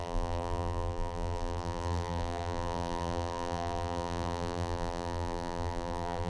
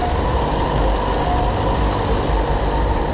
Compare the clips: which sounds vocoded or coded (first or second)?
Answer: first